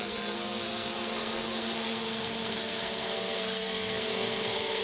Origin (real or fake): fake